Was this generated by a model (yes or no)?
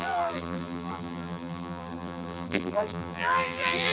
yes